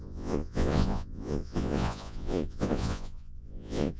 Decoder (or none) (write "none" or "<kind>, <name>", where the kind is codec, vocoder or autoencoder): vocoder, Vocos